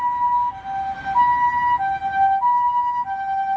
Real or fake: real